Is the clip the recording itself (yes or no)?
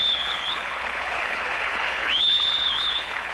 no